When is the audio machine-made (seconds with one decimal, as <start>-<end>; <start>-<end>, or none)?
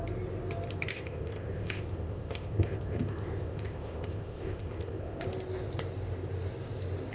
0.9-5.2